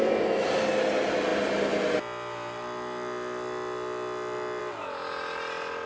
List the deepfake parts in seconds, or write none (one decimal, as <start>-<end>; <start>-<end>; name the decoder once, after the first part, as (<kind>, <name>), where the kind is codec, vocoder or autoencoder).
none